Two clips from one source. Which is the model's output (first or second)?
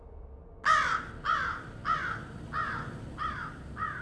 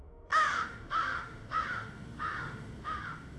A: second